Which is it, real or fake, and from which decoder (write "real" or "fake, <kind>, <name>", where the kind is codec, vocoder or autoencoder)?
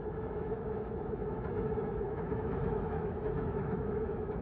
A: fake, autoencoder, DAC-VAE